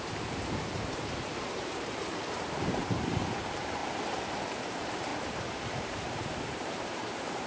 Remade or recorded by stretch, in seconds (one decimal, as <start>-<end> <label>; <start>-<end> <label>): 0.0-3.8 remade; 3.8-4.6 recorded; 4.6-5.1 remade; 5.1-5.7 recorded; 5.7-7.5 remade